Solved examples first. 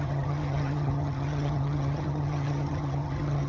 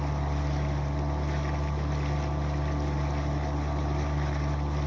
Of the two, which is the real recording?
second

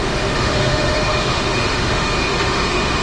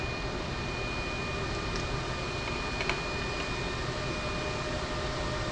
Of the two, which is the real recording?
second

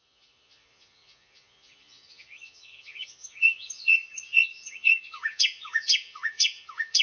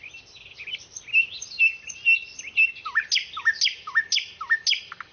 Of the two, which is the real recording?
second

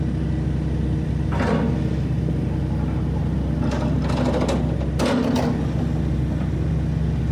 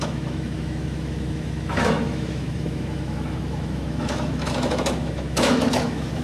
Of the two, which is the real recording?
first